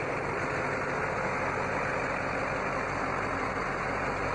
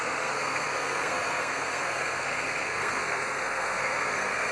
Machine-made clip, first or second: second